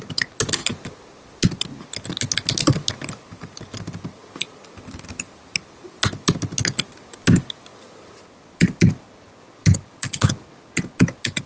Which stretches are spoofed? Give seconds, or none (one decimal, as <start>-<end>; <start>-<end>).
none